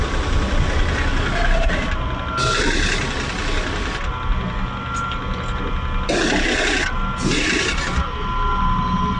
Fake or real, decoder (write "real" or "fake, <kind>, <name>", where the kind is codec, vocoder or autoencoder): real